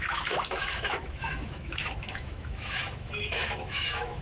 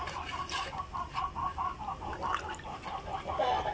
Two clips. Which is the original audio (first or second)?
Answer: second